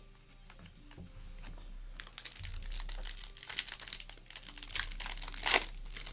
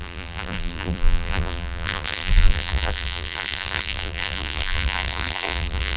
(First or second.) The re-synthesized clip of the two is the second